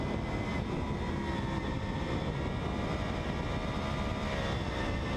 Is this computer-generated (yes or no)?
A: no